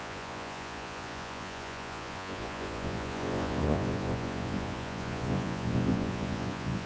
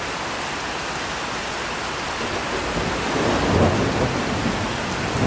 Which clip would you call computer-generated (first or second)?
first